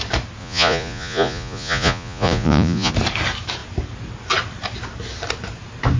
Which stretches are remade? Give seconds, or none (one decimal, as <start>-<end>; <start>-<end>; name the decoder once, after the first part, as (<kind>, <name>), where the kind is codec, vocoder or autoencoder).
0.4-2.9 (vocoder, Vocos)